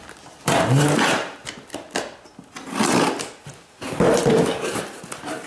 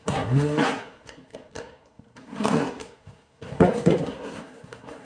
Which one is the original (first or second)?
first